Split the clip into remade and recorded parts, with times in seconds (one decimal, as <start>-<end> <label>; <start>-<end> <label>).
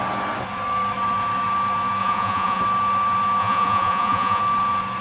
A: 0.0-2.0 recorded; 2.0-2.6 remade; 2.6-3.4 recorded; 3.4-4.4 remade; 4.4-5.0 recorded